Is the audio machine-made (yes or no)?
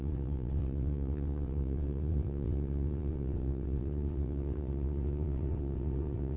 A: yes